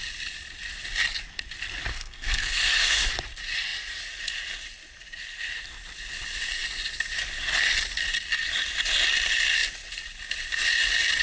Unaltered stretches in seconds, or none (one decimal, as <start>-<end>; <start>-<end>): 0.0-1.9; 3.0-11.2